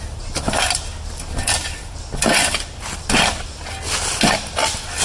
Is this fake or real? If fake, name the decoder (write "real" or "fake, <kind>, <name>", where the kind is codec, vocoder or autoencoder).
real